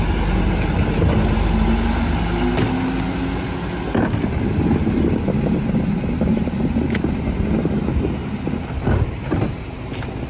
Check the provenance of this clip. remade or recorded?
recorded